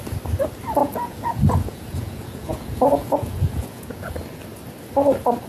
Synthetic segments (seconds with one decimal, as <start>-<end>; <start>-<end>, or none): 0.8-4.1